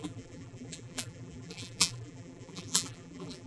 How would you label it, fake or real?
fake